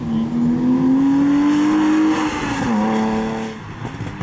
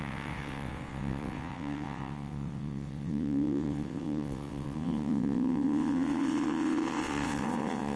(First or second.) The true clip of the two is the first